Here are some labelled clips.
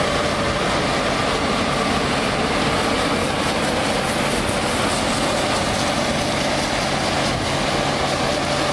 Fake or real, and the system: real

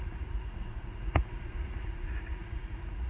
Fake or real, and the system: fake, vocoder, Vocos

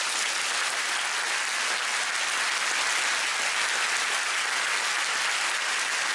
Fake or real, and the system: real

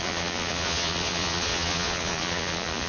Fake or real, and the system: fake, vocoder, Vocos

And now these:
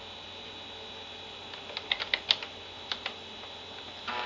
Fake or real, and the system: real